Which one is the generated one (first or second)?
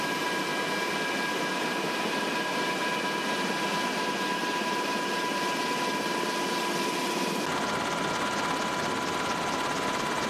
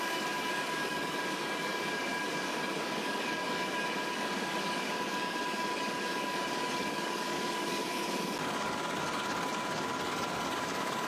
second